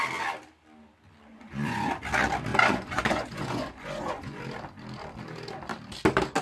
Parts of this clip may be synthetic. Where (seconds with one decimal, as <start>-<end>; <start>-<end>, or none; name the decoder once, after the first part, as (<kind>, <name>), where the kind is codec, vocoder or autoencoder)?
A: 1.3-1.9 (vocoder, Vocos); 2.5-4.4